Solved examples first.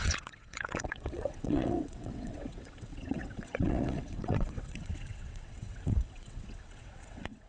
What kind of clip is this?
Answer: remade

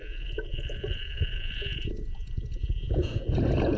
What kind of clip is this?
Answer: remade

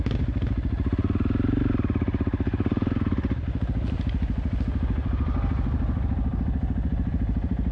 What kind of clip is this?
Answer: recorded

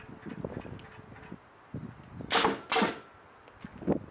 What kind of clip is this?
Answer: recorded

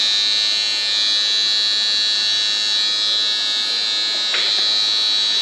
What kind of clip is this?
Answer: recorded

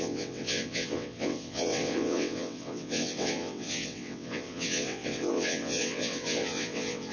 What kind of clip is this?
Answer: remade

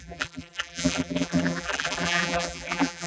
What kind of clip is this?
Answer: remade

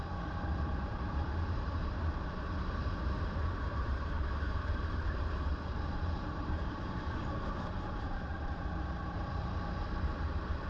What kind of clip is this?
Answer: remade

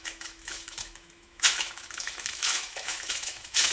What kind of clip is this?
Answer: remade